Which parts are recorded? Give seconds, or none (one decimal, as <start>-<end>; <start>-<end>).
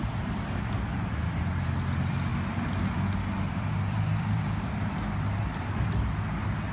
2.3-3.5